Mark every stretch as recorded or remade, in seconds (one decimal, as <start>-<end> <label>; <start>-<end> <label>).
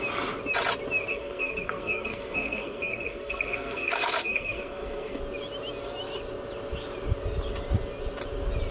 0.0-1.1 recorded; 1.1-5.2 remade; 5.2-8.7 recorded